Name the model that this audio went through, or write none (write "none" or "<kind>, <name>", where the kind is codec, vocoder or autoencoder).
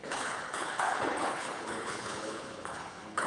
codec, HILCodec